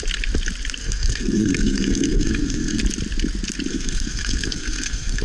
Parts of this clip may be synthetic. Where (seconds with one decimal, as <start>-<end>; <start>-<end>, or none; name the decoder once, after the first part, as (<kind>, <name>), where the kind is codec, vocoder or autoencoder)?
0.8-2.8 (codec, SNAC); 3.7-5.2